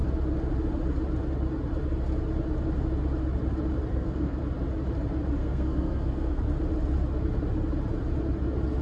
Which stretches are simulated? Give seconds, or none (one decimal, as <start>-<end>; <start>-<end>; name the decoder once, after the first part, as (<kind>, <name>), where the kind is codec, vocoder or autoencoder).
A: 3.9-4.4 (codec, SNAC); 5.4-6.4